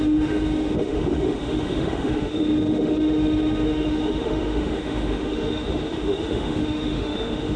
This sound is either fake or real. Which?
fake